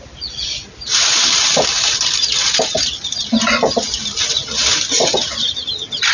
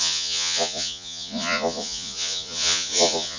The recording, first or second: first